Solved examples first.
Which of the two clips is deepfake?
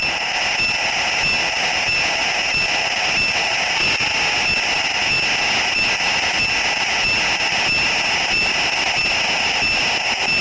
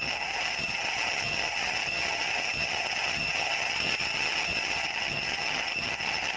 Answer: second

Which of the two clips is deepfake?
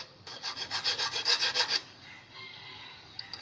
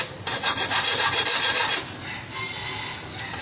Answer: first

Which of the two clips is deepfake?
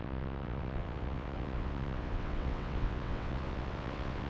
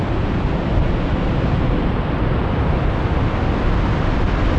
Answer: first